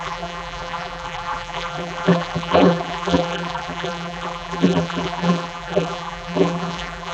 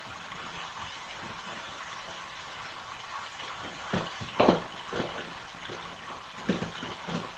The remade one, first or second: first